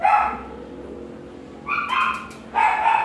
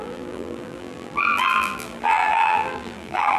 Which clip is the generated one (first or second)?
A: second